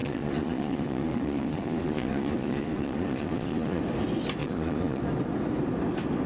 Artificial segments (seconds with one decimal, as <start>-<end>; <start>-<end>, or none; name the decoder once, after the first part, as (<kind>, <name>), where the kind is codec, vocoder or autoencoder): 0.0-3.8 (vocoder, Vocos); 4.4-5.0